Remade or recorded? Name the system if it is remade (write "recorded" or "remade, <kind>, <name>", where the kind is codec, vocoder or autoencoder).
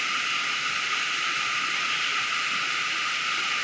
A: recorded